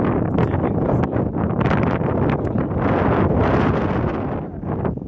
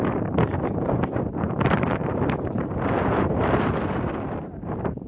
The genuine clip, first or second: first